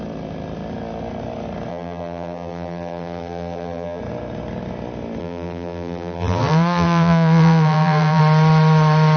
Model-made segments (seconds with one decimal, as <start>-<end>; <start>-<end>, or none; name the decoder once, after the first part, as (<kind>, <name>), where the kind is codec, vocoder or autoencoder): 1.7-4.0 (vocoder, BigVGAN v2); 5.2-8.2